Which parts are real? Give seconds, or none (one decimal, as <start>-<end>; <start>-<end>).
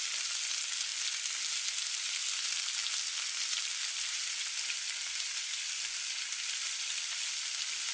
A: 0.0-7.9